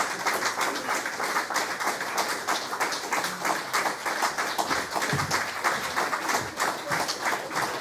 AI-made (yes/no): no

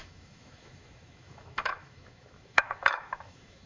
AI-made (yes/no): yes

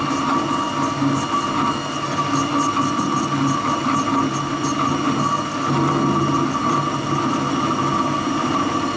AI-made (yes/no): no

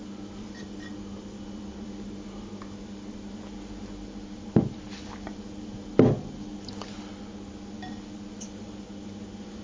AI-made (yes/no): no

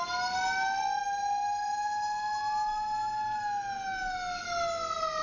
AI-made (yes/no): no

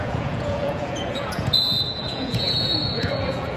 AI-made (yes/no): yes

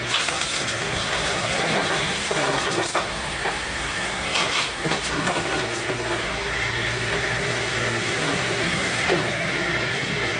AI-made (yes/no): yes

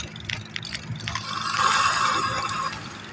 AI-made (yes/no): no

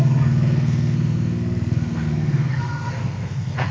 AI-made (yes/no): yes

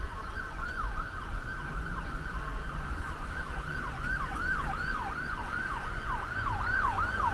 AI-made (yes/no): yes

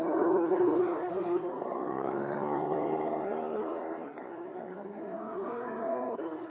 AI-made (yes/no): yes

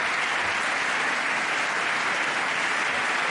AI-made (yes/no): no